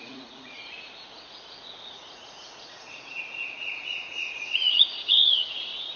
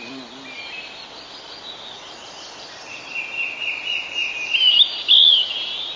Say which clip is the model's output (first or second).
first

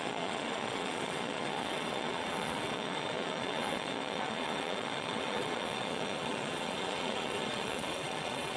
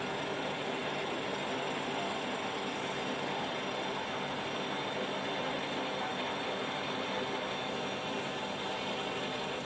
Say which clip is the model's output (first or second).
first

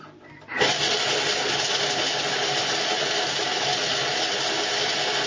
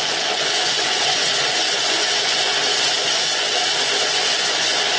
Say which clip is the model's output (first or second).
second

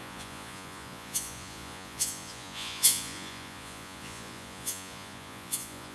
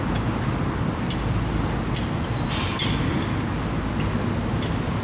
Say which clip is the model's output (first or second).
first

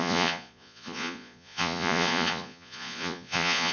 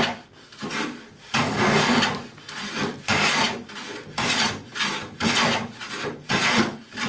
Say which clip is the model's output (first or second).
first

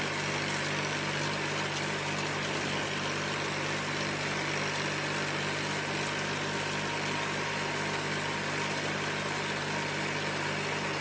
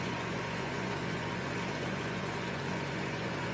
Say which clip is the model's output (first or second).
second